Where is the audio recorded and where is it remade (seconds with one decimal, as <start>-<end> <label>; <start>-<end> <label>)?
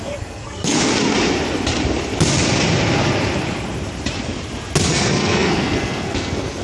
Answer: 0.0-0.9 remade; 0.9-4.9 recorded; 4.9-6.6 remade